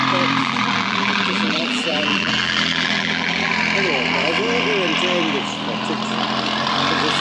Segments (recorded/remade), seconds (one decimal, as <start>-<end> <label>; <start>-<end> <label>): 0.0-0.4 recorded; 0.4-3.5 remade; 3.5-7.2 recorded